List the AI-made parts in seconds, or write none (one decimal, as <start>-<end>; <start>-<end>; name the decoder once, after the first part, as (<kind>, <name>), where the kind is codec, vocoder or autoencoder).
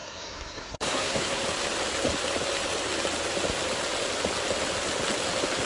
0.0-1.4 (codec, SNAC)